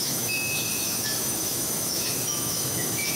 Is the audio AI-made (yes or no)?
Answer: yes